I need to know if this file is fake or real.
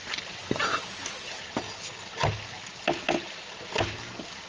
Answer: real